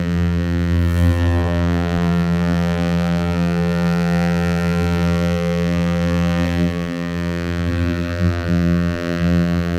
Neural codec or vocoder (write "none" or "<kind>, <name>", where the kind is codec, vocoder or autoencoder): vocoder, BigVGAN v2